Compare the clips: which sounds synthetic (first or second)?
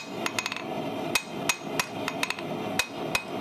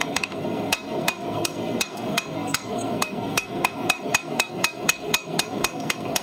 second